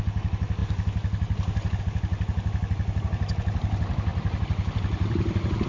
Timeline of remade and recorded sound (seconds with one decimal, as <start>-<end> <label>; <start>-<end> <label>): 0.0-4.1 recorded; 4.1-5.7 remade